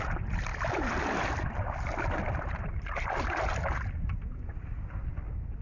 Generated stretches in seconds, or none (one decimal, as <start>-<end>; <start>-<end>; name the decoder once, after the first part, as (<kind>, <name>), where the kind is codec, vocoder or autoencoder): none